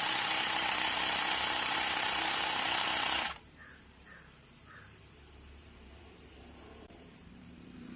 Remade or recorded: remade